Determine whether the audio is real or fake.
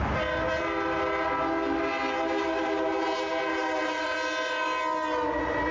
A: real